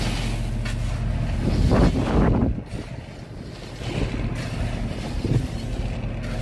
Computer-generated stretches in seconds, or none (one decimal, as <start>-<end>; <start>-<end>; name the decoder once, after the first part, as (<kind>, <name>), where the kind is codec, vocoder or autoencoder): none